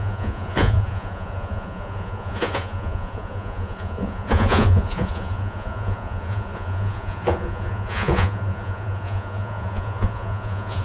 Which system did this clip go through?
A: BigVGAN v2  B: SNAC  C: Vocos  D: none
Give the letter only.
C